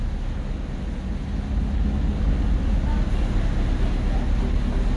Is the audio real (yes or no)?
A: yes